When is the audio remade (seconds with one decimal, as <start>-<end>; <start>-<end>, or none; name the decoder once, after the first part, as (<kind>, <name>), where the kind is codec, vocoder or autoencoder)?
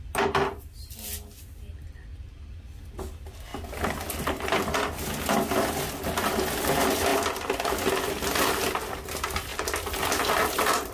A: none